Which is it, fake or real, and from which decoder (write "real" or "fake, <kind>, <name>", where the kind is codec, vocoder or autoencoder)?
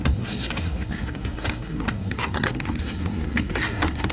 fake, codec, SNAC